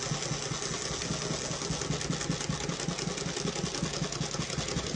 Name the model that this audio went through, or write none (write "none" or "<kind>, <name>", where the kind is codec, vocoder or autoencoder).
none